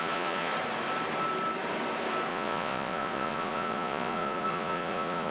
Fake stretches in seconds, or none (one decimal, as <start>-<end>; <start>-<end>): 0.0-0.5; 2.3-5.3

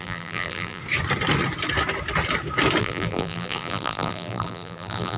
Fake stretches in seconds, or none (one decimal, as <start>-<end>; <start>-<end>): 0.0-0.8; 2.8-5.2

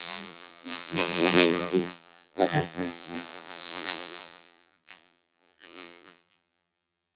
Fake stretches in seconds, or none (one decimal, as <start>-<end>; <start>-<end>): 0.0-7.2

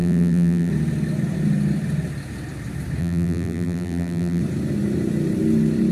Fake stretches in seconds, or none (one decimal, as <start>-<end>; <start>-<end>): 0.0-0.7; 3.0-4.4